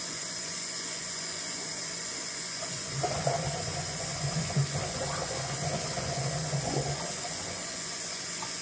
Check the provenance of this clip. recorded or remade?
remade